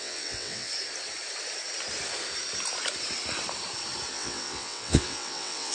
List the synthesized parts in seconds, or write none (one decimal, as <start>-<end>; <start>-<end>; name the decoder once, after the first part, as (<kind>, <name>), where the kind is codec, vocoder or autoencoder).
0.0-0.7 (vocoder, WaveNeXt); 4.1-5.7